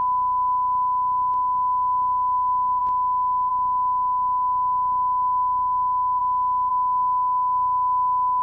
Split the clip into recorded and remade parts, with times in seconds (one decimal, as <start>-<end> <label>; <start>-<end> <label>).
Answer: 0.0-2.8 remade; 2.8-3.5 recorded; 3.5-6.2 remade; 6.2-6.7 recorded; 6.7-8.4 remade